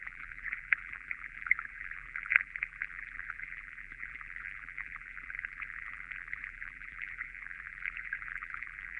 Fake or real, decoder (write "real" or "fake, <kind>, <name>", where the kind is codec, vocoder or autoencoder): fake, vocoder, BigVGAN v2